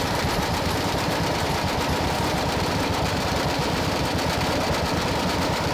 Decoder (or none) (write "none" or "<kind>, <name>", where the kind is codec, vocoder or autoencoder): vocoder, BigVGAN v2